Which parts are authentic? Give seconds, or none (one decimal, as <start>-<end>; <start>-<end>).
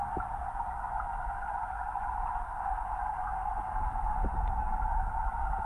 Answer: 0.0-5.7